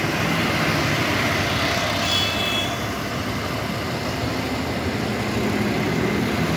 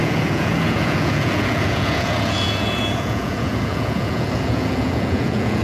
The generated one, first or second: second